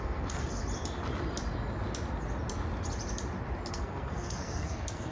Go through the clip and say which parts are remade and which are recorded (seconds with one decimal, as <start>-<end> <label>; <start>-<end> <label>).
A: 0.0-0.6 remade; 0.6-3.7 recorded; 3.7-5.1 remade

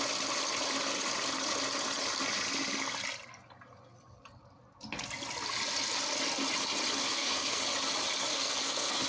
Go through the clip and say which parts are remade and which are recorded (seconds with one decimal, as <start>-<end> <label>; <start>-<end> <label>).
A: 0.0-7.0 recorded; 7.0-7.6 remade; 7.6-8.3 recorded; 8.3-9.1 remade

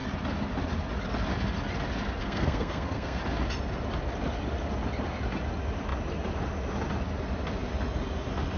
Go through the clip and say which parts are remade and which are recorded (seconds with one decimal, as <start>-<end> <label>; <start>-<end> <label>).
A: 0.0-2.2 recorded; 2.2-3.2 remade; 3.2-8.6 recorded

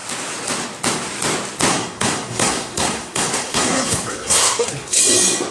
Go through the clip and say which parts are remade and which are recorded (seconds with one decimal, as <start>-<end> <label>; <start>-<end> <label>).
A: 0.0-1.7 recorded; 1.7-5.0 remade; 5.0-5.5 recorded

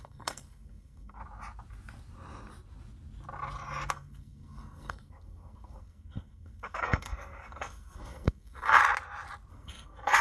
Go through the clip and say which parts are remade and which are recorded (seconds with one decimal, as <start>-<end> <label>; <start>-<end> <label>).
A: 0.0-1.2 remade; 1.2-3.9 recorded; 3.9-8.8 remade; 8.8-9.5 recorded; 9.5-10.2 remade

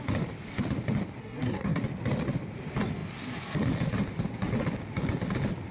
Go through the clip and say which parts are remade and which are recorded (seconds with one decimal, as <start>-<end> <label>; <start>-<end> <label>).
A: 0.0-1.2 recorded; 1.2-1.8 remade; 1.8-5.7 recorded

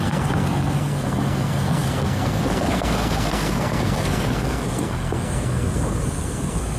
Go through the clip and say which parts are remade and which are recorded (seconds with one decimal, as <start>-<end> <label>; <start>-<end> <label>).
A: 0.0-6.8 remade